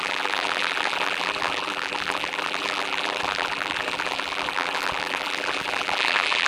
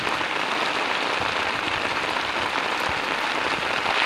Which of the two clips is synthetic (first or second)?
first